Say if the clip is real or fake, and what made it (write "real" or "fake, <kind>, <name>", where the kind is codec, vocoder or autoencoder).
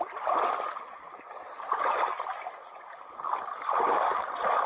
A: real